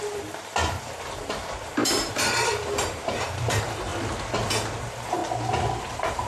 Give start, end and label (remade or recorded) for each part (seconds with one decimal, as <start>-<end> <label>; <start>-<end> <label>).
0.0-3.9 remade; 3.9-4.8 recorded; 4.8-5.2 remade; 5.2-5.8 recorded; 5.8-6.3 remade